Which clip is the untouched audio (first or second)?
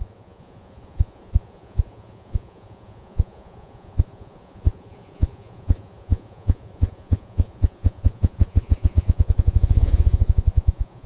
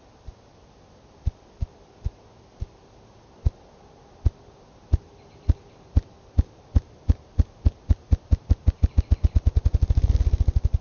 second